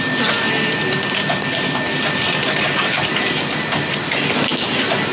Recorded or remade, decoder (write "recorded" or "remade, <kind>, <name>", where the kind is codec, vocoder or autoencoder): recorded